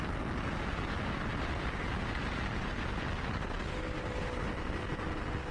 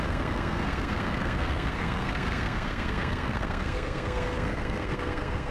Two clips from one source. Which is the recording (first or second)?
first